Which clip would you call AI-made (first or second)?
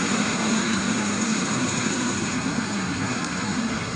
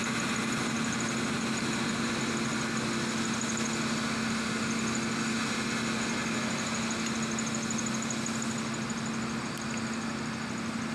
first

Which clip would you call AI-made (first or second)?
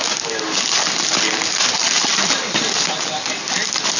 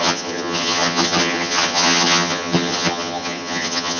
second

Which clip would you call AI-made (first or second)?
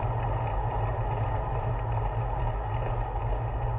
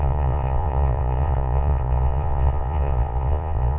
second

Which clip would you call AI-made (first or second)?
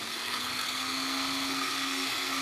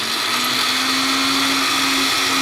first